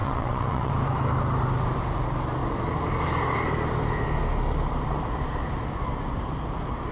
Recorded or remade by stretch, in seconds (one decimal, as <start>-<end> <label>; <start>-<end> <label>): 0.0-0.7 remade; 0.7-6.9 recorded